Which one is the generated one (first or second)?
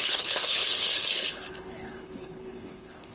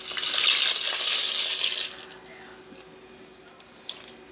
first